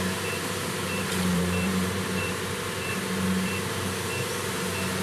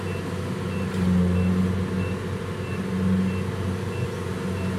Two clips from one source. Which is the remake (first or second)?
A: first